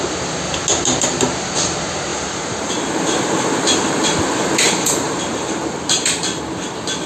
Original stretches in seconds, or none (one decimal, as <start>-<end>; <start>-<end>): 0.0-2.1; 6.4-7.1